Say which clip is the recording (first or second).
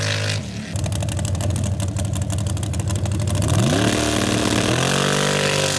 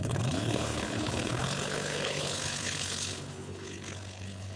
first